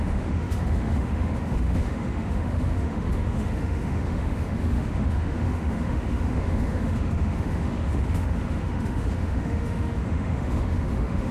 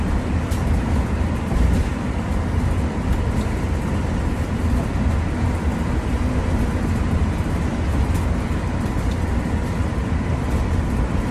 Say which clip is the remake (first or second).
first